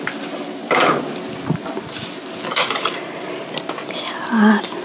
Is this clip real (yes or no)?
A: yes